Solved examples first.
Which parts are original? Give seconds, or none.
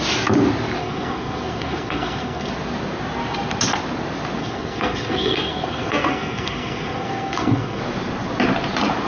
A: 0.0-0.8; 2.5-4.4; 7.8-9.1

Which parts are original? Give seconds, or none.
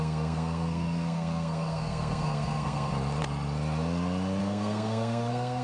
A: 2.9-4.4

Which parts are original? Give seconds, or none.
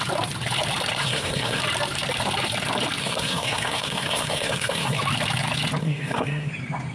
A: 0.0-1.0; 1.6-3.0; 5.0-5.8; 6.5-6.9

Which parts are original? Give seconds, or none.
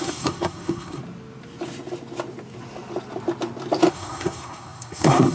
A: 1.0-3.9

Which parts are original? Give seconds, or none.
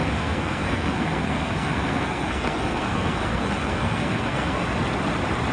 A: 4.6-5.5